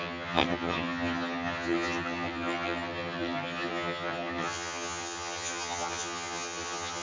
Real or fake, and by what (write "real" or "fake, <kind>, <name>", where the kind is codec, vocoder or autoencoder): fake, vocoder, HiFi-GAN